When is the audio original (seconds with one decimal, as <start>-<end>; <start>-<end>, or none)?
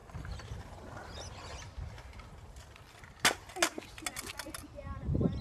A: 0.0-5.4